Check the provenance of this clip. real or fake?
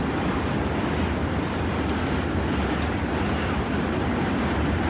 real